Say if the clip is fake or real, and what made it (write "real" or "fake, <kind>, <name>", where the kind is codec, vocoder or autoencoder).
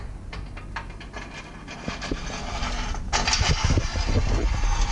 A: real